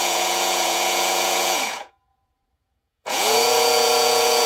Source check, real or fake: fake